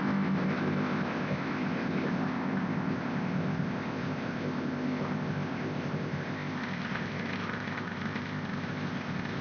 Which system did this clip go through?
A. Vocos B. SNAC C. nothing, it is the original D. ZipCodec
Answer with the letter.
D